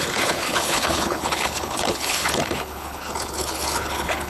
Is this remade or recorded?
remade